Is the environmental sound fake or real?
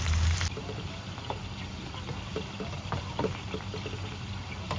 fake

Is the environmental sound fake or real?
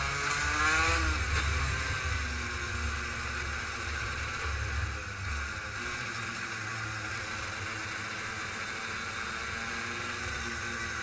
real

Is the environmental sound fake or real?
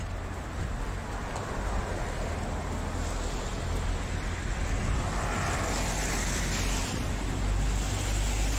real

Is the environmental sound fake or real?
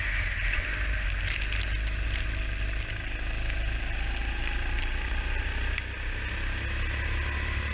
real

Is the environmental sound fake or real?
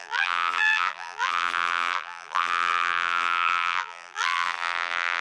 fake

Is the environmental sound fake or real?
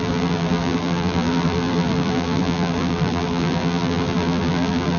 fake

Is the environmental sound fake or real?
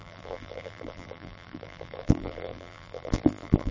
fake